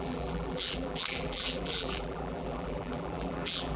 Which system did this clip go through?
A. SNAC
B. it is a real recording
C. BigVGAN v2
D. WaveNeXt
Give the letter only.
C